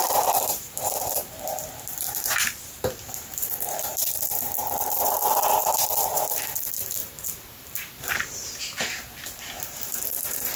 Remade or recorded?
remade